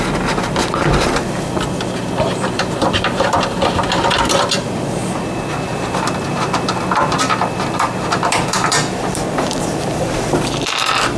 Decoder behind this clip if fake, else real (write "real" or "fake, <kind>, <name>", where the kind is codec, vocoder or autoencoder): fake, vocoder, BigVGAN v2